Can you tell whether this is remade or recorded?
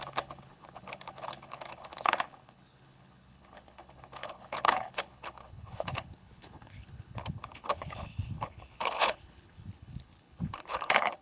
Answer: remade